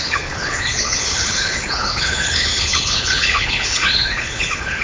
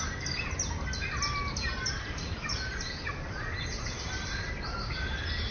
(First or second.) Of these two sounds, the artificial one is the first